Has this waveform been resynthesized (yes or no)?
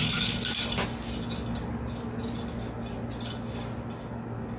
no